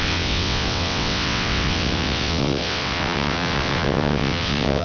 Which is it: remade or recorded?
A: remade